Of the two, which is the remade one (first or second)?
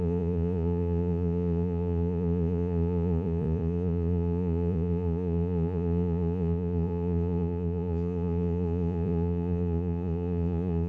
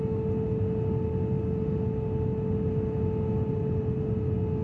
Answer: first